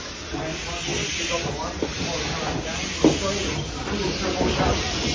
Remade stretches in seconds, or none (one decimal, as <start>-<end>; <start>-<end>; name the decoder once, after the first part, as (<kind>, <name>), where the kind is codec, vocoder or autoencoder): none